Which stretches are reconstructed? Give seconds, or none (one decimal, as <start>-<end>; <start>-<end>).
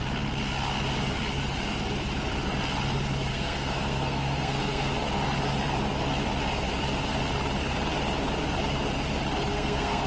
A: 3.3-4.9; 9.5-10.1